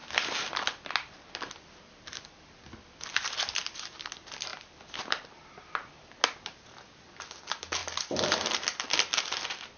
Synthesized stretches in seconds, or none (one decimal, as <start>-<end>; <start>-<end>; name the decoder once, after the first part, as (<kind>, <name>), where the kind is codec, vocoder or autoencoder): 0.0-4.1 (vocoder, BigVGAN v2); 4.5-5.5; 7.8-9.2